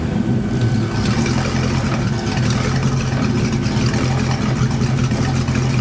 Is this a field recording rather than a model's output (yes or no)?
yes